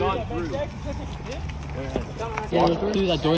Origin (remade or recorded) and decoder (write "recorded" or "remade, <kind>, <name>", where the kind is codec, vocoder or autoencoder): recorded